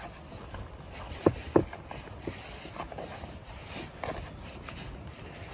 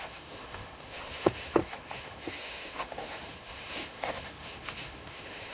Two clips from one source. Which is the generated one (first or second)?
second